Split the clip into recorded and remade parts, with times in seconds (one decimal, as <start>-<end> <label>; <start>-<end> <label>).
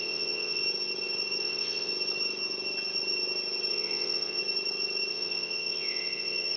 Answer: 0.0-0.6 remade; 0.6-1.4 recorded; 1.4-1.9 remade; 1.9-3.7 recorded; 3.7-4.4 remade; 4.4-5.1 recorded; 5.1-6.6 remade